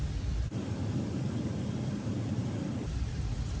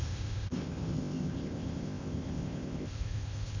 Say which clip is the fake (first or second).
second